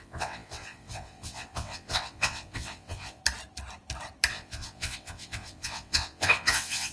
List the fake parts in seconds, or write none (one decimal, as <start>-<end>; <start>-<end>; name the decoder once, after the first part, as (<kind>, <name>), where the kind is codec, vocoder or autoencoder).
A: 0.0-3.2 (vocoder, WaveNeXt); 4.3-6.9